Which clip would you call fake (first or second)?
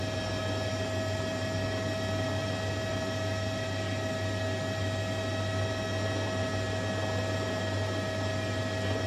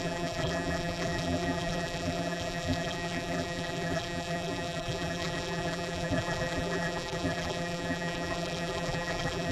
second